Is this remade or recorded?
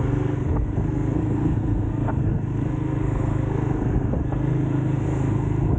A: remade